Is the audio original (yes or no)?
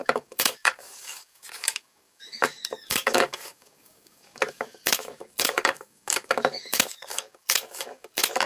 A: no